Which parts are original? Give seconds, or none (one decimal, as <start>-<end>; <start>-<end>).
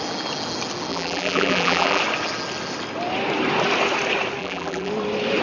0.0-0.9; 2.0-4.4; 4.9-5.4